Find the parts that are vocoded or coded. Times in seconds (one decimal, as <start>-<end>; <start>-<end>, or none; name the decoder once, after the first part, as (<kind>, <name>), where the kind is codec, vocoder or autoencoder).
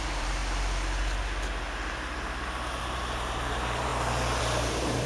0.0-0.4 (vocoder, BigVGAN v2); 2.8-3.9; 4.4-5.1